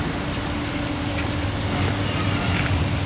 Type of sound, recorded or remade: recorded